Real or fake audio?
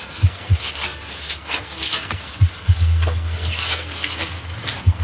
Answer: fake